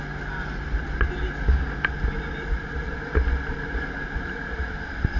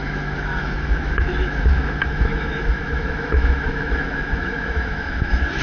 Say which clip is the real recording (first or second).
first